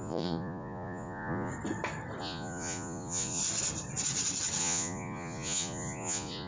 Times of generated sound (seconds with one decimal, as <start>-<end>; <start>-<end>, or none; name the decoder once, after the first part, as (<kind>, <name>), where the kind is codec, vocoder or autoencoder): 0.0-1.5 (vocoder, Vocos); 2.2-3.4; 4.6-6.5